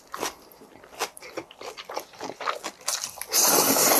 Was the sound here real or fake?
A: real